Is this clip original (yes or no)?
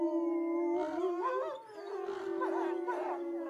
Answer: yes